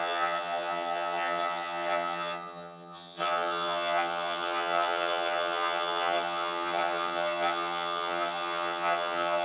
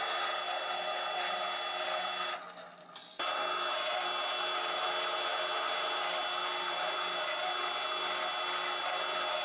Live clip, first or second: second